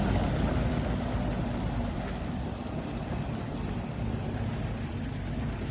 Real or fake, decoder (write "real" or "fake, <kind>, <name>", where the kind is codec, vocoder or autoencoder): real